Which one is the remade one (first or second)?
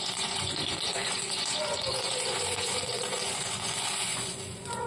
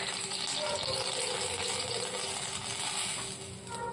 first